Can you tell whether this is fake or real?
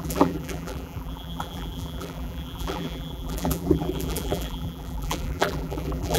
fake